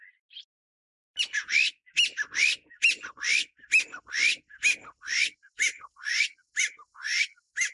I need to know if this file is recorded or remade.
recorded